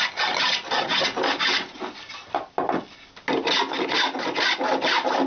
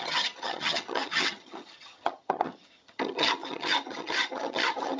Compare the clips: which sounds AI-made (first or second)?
second